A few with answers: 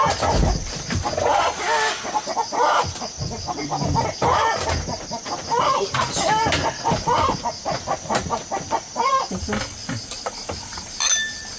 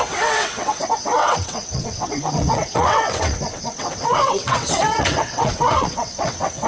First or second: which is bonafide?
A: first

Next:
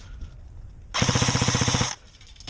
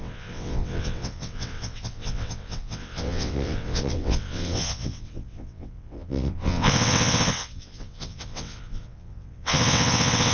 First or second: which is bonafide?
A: first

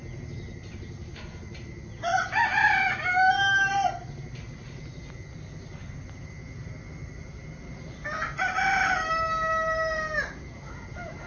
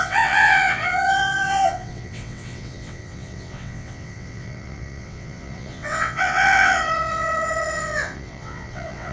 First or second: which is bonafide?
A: first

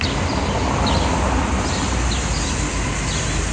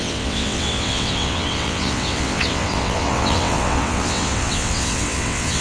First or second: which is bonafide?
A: first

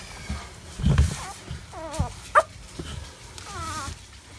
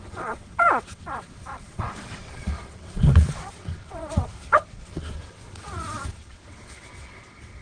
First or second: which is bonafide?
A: first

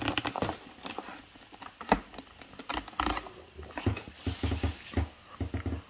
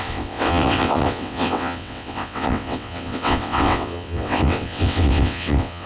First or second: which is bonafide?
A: first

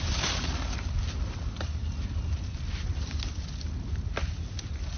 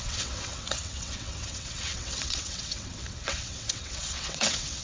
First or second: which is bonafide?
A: first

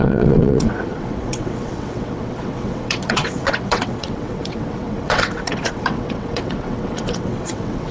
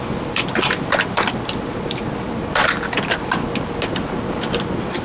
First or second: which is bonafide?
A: second